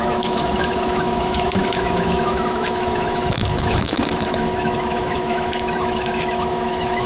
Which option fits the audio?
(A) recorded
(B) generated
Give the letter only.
B